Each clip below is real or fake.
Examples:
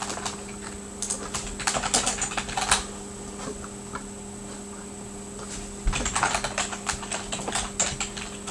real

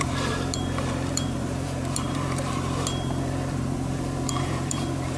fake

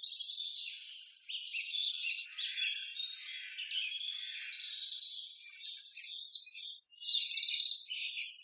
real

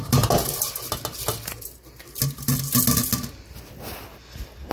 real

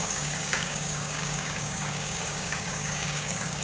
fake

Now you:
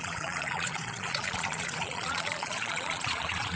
fake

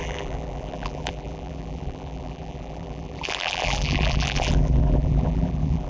fake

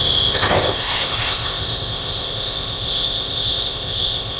fake